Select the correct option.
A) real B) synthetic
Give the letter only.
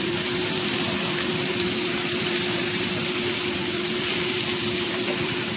B